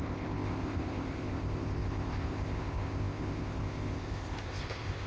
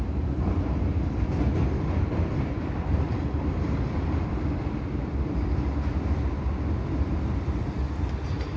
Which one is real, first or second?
second